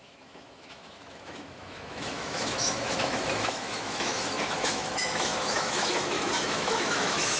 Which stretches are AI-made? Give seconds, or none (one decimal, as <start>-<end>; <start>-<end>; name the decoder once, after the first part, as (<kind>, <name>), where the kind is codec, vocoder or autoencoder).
0.0-7.4 (autoencoder, DAC-VAE)